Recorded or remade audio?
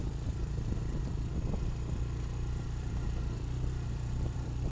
remade